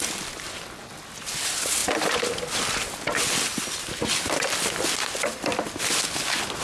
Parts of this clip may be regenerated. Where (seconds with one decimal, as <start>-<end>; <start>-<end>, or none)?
none